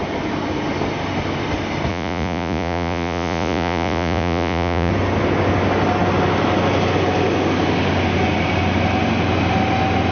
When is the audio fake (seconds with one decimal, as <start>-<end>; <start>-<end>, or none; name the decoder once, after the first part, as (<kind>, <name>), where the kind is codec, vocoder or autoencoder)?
1.9-4.9 (vocoder, Vocos)